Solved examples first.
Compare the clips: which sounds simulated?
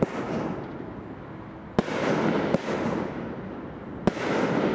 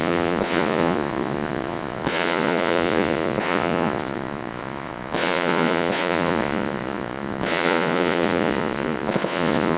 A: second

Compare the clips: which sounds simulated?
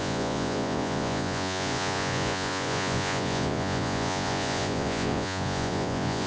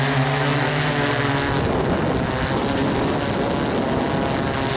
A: first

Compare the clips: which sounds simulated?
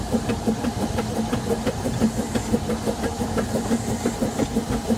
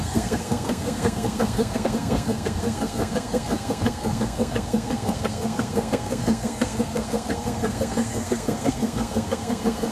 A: second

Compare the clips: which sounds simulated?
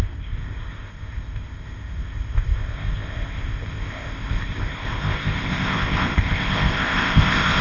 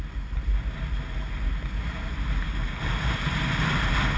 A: first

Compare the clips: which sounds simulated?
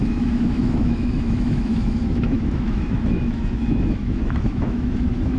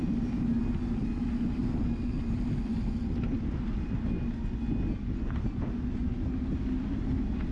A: first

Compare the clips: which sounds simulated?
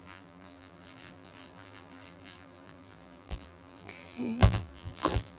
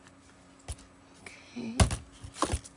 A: first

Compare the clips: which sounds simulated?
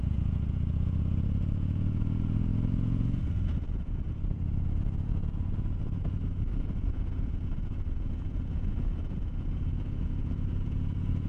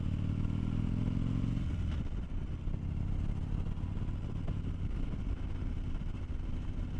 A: first